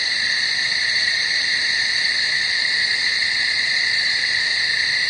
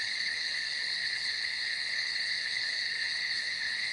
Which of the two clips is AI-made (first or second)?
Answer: second